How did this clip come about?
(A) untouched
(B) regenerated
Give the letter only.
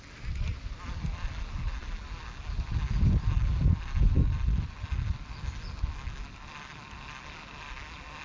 A